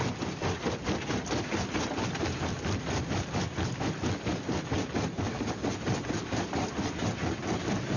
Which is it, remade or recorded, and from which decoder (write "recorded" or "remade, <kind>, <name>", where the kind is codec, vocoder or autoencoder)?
remade, vocoder, BigVGAN v2